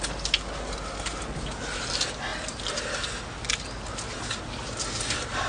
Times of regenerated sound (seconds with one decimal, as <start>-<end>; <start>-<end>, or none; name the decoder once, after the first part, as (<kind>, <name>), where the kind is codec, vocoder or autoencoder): none